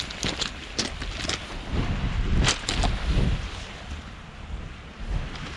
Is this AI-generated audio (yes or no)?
no